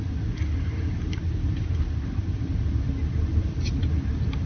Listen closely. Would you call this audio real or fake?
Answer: real